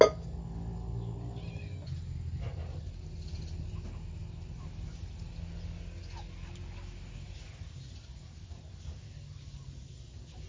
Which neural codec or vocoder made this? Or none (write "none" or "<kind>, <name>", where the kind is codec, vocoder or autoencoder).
none